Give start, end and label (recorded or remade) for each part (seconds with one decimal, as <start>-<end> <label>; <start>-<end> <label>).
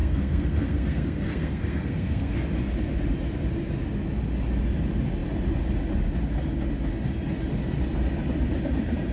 0.0-2.3 remade; 2.3-9.1 recorded